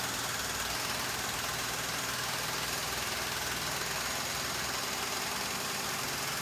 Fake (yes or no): no